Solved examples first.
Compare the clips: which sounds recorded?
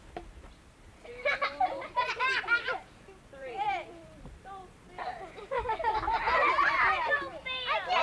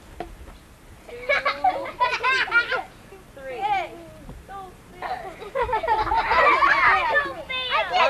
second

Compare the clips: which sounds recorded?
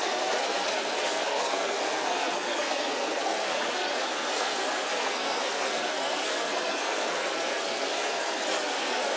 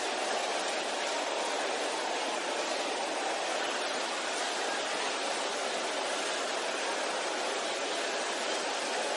second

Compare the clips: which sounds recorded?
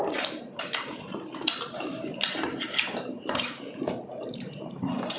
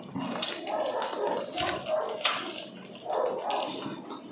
second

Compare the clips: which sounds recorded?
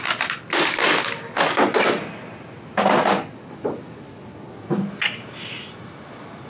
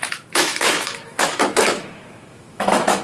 first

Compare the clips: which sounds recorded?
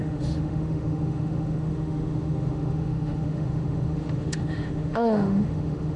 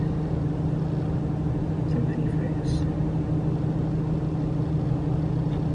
second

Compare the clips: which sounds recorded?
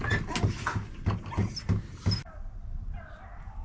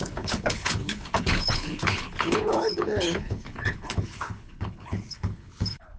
first